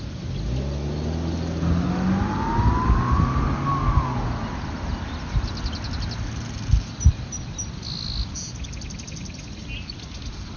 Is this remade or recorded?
recorded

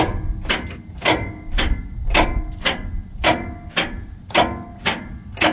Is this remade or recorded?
recorded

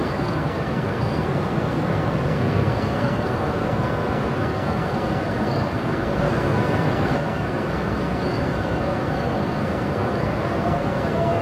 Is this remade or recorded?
remade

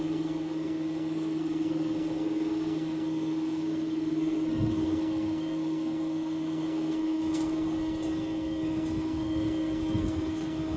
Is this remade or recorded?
remade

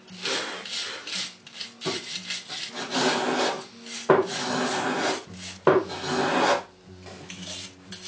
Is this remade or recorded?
recorded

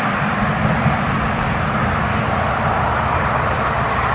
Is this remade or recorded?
remade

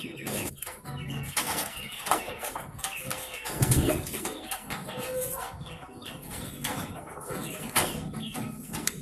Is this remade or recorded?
remade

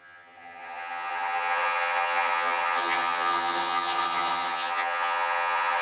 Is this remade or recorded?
remade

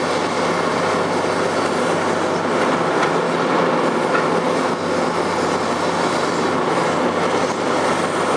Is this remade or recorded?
recorded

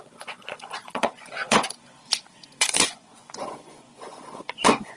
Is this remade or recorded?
remade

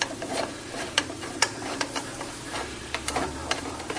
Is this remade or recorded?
remade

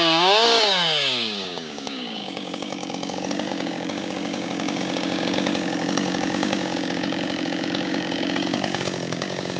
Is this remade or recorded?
remade